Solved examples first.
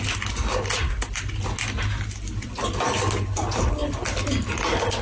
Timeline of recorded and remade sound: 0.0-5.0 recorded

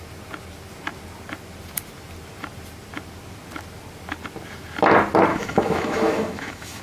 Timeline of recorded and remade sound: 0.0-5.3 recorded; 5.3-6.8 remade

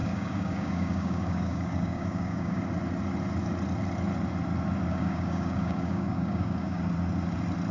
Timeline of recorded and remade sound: 0.0-2.6 remade; 2.6-4.9 recorded; 4.9-6.8 remade; 6.8-7.7 recorded

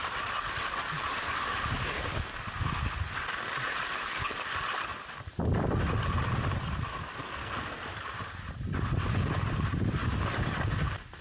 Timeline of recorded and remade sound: 0.0-7.2 recorded; 7.2-7.8 remade; 7.8-11.2 recorded

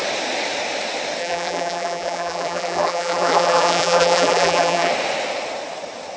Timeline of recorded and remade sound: 0.0-1.2 recorded; 1.2-4.9 remade; 4.9-6.2 recorded